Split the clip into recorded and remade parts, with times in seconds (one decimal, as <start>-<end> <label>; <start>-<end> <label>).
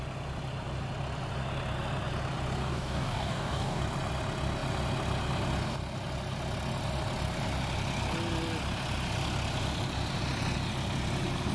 0.0-2.6 recorded; 2.6-3.8 remade; 3.8-11.5 recorded